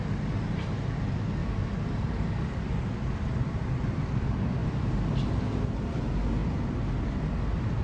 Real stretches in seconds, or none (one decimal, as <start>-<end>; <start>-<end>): 0.0-7.8